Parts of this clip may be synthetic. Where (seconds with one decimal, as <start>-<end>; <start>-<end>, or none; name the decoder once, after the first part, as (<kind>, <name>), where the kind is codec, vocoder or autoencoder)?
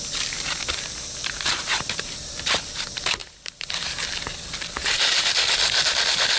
1.2-2.5 (vocoder, BigVGAN v2); 3.2-4.1; 4.8-5.3